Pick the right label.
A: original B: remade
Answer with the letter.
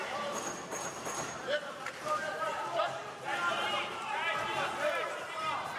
B